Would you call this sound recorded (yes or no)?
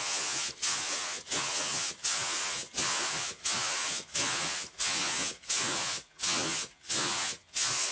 no